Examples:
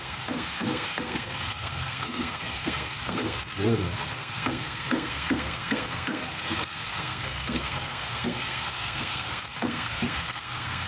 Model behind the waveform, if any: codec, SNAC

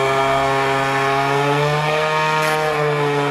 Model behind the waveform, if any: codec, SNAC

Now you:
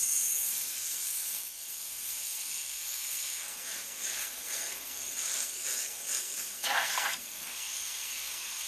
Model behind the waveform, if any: codec, SNAC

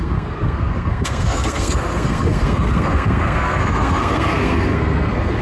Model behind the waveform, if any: codec, SNAC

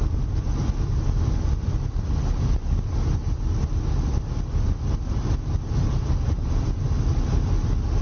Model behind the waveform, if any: none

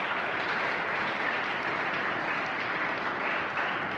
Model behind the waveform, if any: none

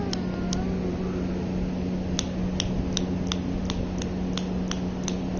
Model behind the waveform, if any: none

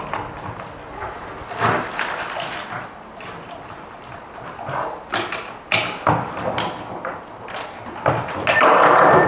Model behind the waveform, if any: none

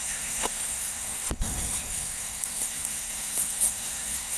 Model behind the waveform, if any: codec, SNAC